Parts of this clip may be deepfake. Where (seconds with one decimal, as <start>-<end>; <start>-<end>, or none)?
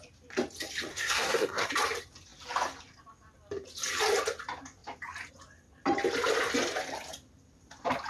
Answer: 0.9-1.7